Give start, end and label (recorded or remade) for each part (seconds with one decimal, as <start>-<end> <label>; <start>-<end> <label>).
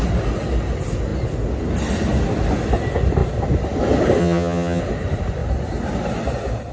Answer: 0.0-4.2 recorded; 4.2-4.8 remade; 4.8-6.7 recorded